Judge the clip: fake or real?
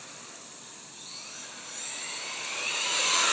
real